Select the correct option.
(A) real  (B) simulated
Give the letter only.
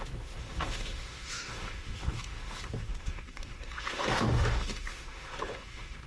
B